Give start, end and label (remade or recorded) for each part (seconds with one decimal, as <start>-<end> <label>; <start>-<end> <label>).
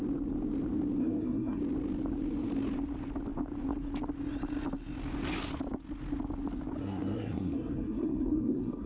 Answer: 0.0-1.0 recorded; 1.0-1.6 remade; 1.6-6.8 recorded; 6.8-8.9 remade